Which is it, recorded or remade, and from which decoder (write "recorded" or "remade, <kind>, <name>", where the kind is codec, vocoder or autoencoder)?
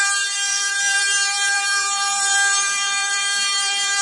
remade, vocoder, BigVGAN v2